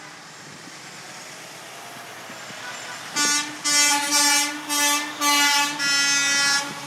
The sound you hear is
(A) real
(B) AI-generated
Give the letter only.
A